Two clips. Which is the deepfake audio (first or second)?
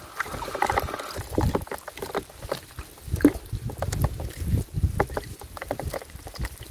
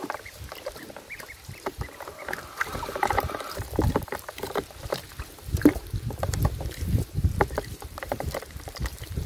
second